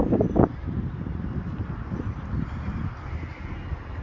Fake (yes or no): no